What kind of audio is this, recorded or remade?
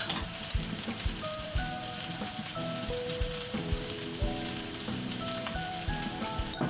remade